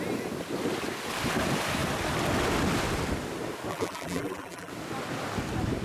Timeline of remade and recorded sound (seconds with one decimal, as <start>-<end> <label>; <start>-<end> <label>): 0.0-3.7 recorded; 3.7-4.7 remade; 4.7-5.8 recorded